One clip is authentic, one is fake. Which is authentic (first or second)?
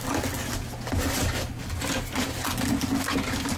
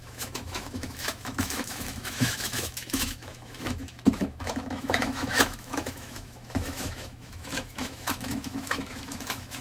first